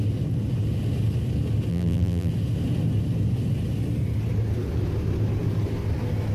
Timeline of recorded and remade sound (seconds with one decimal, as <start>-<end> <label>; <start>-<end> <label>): 0.0-1.7 recorded; 1.7-2.3 remade; 2.3-6.3 recorded